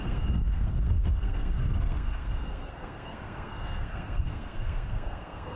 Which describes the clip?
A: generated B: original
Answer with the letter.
A